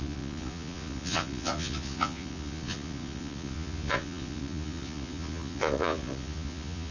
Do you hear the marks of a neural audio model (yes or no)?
yes